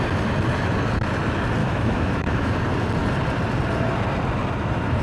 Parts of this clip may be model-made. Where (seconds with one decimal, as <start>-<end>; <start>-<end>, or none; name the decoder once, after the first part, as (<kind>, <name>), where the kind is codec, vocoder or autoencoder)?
1.6-2.5 (autoencoder, DAC-VAE)